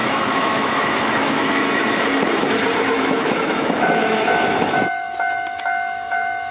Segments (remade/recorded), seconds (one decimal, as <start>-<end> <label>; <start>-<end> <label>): 0.0-2.1 remade; 2.1-3.0 recorded; 3.0-6.5 remade